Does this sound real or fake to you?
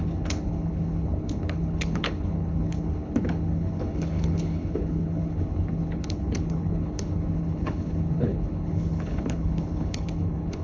fake